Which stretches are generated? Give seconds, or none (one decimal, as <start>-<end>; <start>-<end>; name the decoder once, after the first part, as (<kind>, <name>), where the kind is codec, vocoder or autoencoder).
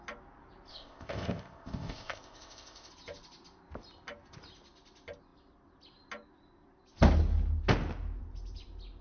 0.7-2.9 (codec, ZipCodec)